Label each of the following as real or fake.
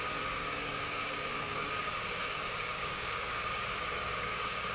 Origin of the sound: fake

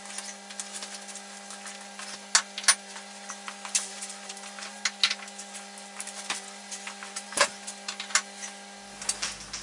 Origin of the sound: real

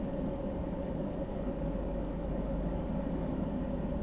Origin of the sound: fake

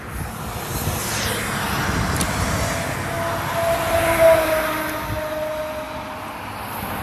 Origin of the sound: real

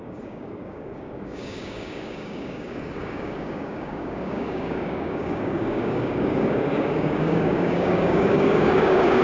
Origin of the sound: fake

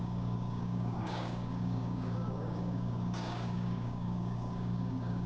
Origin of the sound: fake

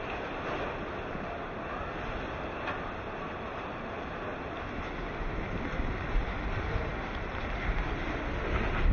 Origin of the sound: real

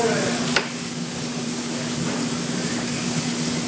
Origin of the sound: fake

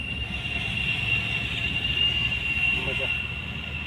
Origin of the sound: real